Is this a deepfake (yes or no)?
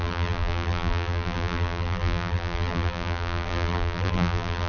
yes